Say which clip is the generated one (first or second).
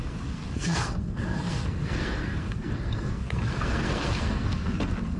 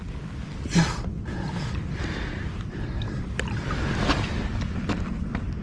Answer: first